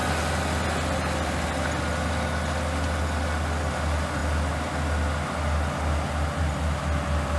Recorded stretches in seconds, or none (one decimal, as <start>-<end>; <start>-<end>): 0.0-7.4